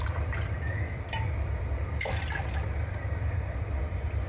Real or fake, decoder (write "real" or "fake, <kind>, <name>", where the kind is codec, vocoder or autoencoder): fake, vocoder, BigVGAN v2